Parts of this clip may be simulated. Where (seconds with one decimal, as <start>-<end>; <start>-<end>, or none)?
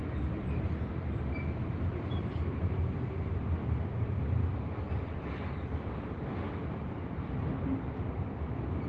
1.6-2.8